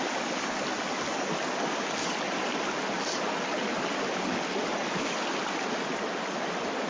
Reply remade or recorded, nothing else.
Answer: recorded